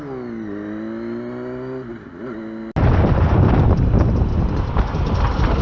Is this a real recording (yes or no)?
yes